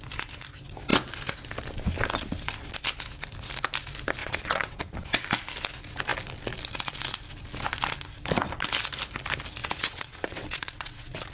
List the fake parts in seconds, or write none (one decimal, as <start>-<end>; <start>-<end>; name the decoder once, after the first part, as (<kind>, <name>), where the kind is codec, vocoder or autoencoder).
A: 4.2-4.8 (vocoder, WaveNeXt); 9.6-11.3